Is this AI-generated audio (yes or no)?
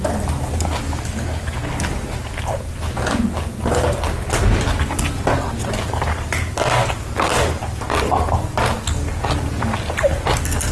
no